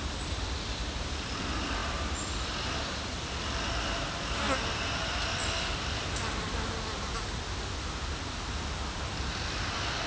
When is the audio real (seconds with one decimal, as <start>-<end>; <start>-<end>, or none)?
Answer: 0.0-10.1